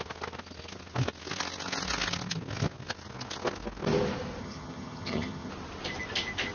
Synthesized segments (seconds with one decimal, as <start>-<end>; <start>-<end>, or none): 4.4-5.5